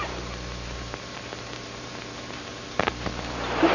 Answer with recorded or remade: remade